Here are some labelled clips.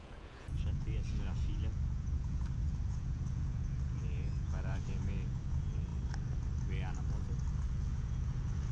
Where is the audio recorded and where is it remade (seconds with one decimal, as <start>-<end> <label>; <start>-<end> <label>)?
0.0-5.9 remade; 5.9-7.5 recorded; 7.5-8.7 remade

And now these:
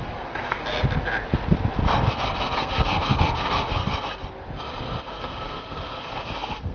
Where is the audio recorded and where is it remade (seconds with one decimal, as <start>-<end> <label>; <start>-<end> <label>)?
0.0-0.6 remade; 0.6-2.1 recorded; 2.1-3.8 remade; 3.8-5.0 recorded; 5.0-6.7 remade

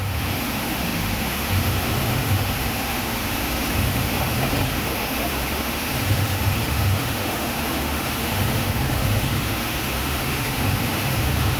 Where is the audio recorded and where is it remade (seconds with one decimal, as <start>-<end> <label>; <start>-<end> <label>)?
0.0-11.6 remade

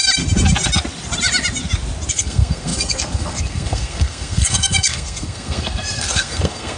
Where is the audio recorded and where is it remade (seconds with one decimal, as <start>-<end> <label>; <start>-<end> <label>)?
0.0-2.1 recorded; 2.1-6.8 remade

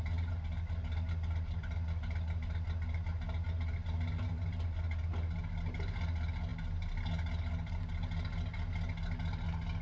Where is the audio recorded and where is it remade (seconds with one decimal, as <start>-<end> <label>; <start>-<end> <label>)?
0.0-9.8 recorded

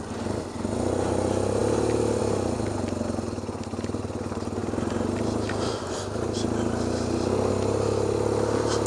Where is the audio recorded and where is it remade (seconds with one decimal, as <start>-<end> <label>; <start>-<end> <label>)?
0.0-8.9 recorded

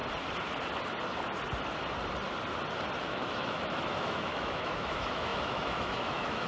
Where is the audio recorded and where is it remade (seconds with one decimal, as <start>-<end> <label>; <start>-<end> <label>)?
0.0-3.0 recorded; 3.0-6.5 remade